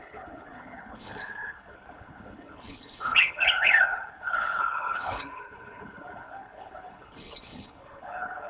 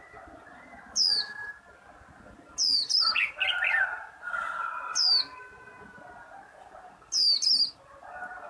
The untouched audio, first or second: second